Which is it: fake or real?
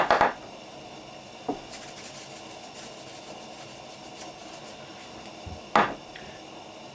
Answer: real